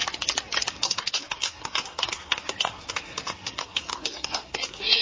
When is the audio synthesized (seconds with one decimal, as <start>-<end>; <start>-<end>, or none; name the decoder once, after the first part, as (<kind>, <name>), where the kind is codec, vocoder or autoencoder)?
0.7-5.0 (codec, SNAC)